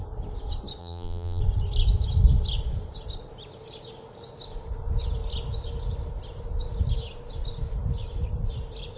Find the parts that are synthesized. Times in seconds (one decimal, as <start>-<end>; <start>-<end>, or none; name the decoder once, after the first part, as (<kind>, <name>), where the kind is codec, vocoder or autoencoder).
0.8-1.4 (vocoder, BigVGAN v2)